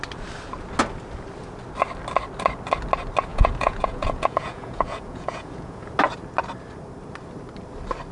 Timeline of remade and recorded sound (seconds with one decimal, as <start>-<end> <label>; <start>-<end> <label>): 0.0-3.3 recorded; 3.3-5.9 remade; 5.9-8.1 recorded